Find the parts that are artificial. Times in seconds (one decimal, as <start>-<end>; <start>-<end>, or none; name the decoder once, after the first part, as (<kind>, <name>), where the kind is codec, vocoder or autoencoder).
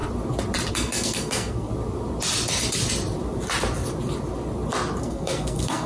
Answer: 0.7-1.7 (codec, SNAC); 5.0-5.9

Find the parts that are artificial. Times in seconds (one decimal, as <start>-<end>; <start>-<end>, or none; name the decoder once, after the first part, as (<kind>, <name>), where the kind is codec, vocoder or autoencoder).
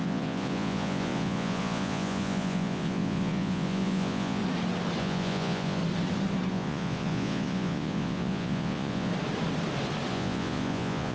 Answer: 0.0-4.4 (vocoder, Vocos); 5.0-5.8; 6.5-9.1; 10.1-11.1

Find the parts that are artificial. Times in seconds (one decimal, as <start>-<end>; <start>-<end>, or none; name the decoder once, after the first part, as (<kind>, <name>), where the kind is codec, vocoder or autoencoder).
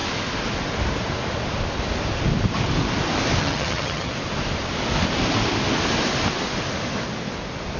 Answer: 3.4-4.1 (vocoder, HiFi-GAN)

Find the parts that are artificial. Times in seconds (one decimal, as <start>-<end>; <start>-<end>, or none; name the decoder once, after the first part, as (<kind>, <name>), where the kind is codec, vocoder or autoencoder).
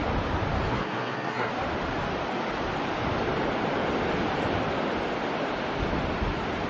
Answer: 0.7-1.5 (codec, SNAC)